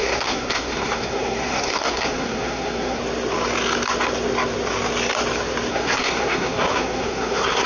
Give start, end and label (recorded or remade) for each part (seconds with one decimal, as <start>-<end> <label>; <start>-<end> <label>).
0.0-3.0 remade; 3.0-5.7 recorded; 5.7-7.7 remade